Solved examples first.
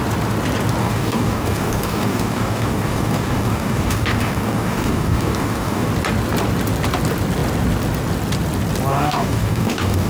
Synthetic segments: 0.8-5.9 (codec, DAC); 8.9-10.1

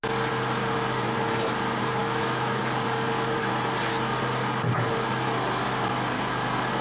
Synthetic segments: 2.0-2.6 (autoencoder, DAC-VAE)

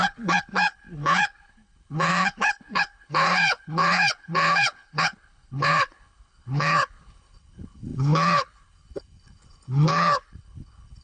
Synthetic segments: 0.0-11.0 (codec, HILCodec)

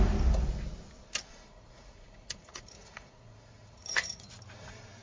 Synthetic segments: 1.3-4.3 (vocoder, Vocos)

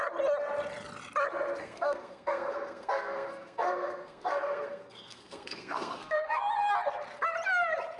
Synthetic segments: 1.6-6.4 (codec, SNAC)

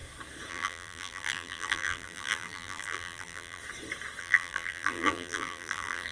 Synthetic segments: 0.5-3.6 (vocoder, BigVGAN v2); 4.2-6.1

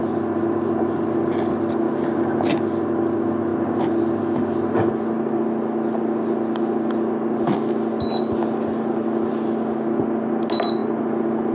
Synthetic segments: none

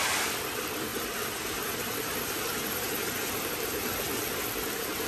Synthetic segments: 0.9-4.0 (vocoder, BigVGAN v2)